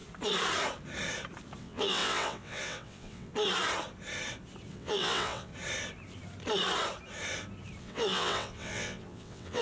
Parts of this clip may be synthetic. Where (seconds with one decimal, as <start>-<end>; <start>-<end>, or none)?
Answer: 1.6-3.3; 4.7-5.5; 7.8-9.6

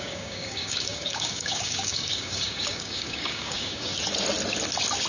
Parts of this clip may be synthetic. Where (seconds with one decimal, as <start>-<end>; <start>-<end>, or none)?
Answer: 0.0-3.9

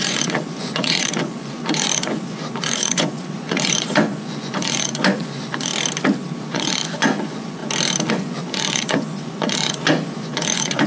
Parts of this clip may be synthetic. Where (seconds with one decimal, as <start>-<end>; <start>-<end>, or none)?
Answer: 0.0-5.7; 6.4-7.6; 8.1-10.9

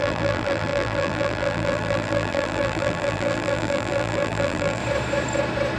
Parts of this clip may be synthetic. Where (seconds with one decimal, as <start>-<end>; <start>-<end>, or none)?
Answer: 0.0-4.8